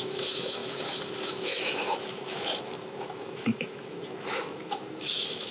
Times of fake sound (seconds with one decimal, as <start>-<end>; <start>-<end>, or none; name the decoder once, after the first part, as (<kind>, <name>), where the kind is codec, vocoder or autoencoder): 0.0-5.5 (autoencoder, DAC-VAE)